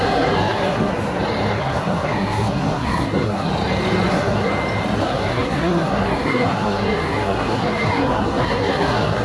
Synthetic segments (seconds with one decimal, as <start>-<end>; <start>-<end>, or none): 0.0-0.9; 1.5-3.5; 4.1-4.5; 5.0-9.2